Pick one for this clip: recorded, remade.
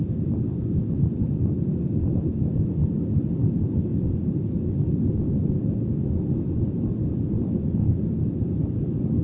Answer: recorded